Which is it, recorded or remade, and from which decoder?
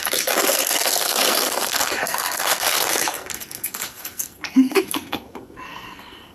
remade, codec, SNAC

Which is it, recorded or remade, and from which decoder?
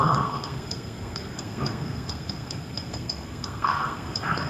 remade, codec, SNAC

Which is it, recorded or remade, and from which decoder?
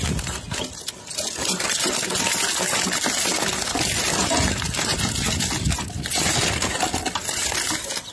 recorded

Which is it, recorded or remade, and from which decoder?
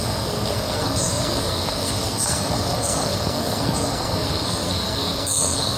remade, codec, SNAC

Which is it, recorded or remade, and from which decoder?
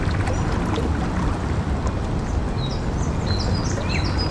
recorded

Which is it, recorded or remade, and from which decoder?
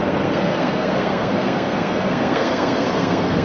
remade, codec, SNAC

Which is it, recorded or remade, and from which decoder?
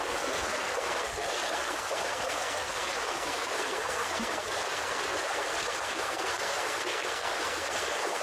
remade, codec, SNAC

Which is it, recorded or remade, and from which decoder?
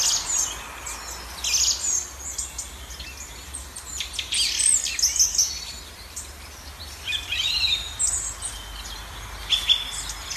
recorded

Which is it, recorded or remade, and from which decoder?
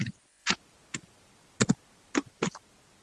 recorded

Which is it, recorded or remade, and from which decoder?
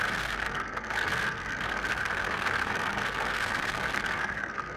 remade, codec, SNAC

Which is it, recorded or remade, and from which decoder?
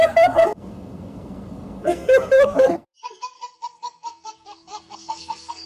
remade, codec, SNAC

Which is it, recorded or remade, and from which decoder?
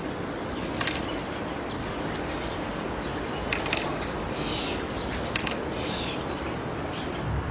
recorded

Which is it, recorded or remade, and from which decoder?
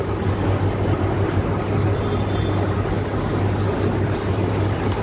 recorded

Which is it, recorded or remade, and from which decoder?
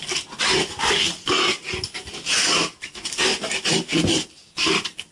recorded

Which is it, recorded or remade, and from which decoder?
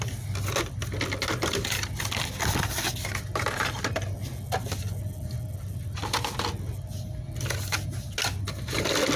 recorded